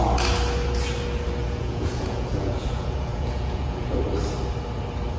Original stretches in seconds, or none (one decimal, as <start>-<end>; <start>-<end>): 0.0-1.4; 4.0-5.2